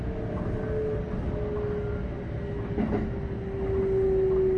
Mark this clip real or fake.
real